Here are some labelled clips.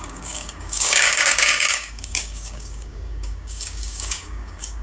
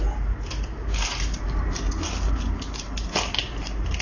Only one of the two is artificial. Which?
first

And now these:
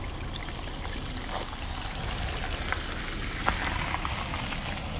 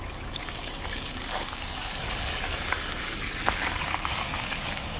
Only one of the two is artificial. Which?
second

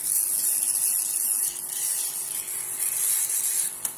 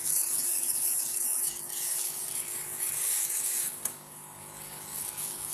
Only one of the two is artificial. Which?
second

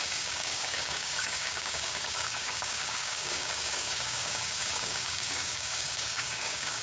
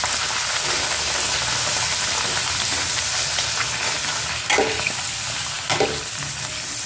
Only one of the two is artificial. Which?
first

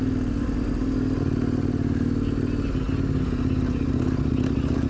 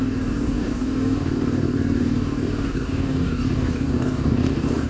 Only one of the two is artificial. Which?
second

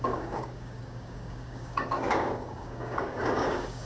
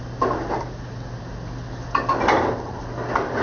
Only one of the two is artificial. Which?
first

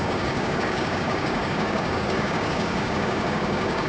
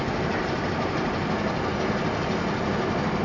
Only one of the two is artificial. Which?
first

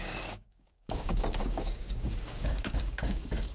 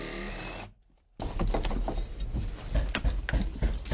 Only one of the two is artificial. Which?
first